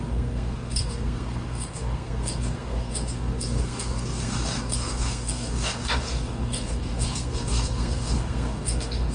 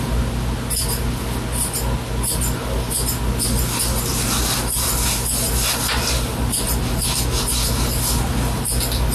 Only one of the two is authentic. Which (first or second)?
second